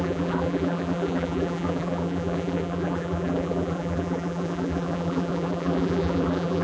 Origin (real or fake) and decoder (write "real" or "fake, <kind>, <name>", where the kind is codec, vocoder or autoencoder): fake, vocoder, BigVGAN v2